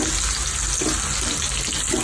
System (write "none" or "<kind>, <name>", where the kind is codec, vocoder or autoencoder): none